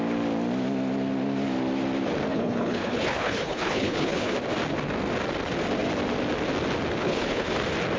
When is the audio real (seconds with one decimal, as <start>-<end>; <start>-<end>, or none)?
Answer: 0.0-2.3; 4.3-7.0; 7.5-8.0